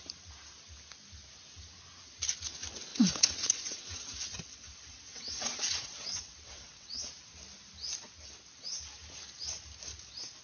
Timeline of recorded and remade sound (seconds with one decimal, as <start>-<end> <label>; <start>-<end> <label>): 0.0-2.9 recorded; 2.9-7.1 remade; 7.1-10.4 recorded